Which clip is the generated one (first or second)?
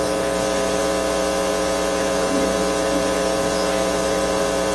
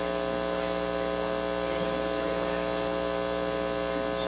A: first